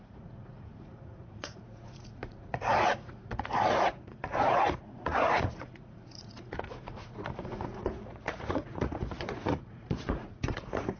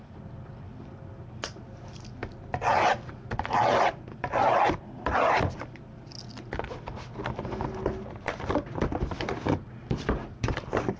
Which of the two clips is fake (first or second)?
first